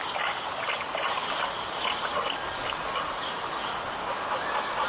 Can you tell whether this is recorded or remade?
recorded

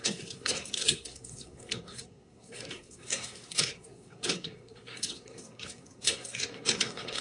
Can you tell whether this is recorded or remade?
remade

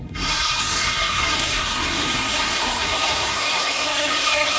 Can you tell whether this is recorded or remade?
remade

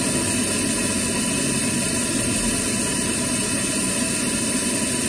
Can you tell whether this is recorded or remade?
recorded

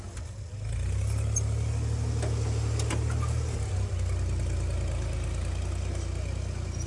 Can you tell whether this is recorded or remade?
recorded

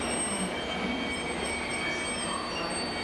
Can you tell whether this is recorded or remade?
recorded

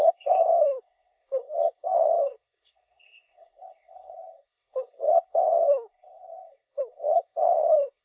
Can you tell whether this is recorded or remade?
remade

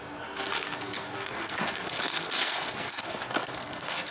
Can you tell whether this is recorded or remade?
remade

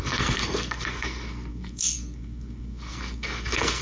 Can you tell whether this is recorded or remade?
remade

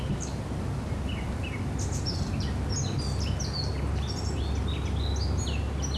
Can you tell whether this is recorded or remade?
recorded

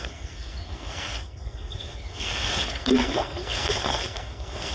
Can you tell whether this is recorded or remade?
remade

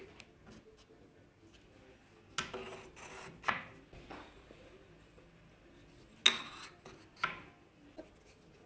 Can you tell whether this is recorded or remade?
recorded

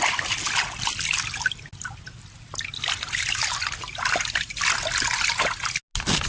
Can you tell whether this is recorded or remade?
recorded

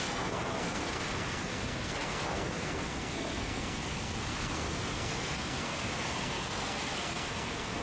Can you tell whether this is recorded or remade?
remade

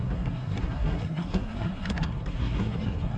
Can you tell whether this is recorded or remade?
remade